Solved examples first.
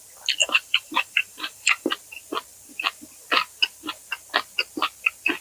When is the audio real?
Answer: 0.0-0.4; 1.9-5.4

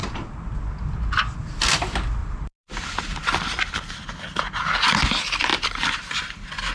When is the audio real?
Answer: 0.0-2.2; 3.9-5.5; 6.2-6.7

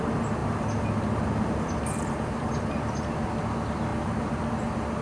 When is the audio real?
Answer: 0.0-0.4; 2.5-3.9; 4.5-5.0

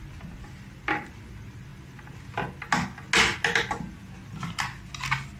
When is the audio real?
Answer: 0.0-5.4